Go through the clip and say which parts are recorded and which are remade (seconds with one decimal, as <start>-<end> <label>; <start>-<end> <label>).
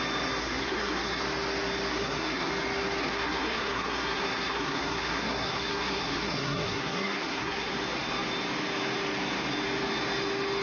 0.0-0.4 recorded; 0.4-1.2 remade; 1.2-1.9 recorded; 1.9-2.5 remade; 2.5-3.0 recorded; 3.0-7.7 remade; 7.7-10.6 recorded